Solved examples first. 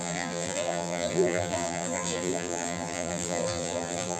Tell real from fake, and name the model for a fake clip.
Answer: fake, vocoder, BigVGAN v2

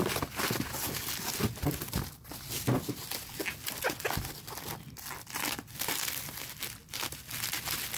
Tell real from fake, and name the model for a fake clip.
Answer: real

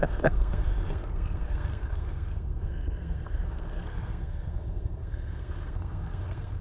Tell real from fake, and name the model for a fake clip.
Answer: fake, codec, SNAC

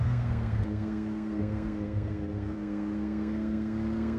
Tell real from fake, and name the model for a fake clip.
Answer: fake, codec, SNAC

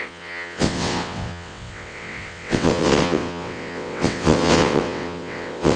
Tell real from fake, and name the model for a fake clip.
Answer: fake, vocoder, WaveNeXt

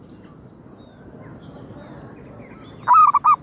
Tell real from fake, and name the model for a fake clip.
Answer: real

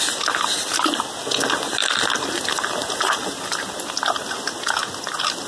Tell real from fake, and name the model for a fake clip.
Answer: real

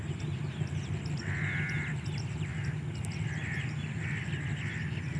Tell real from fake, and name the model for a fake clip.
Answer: real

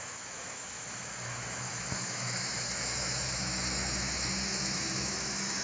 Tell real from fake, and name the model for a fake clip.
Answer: fake, autoencoder, DAC-VAE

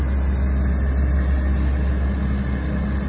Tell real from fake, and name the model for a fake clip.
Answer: real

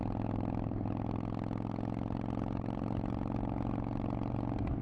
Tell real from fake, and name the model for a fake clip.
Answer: real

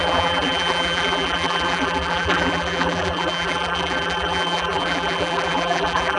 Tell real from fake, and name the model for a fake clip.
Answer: fake, vocoder, BigVGAN v2